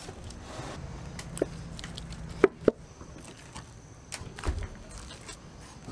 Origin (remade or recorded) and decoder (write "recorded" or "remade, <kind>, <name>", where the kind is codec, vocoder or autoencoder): recorded